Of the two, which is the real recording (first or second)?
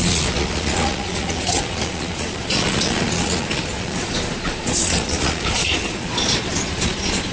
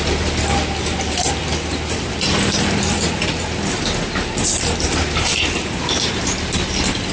second